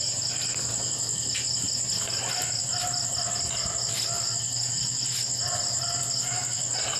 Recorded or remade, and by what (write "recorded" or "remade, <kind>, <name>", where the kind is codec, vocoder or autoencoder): recorded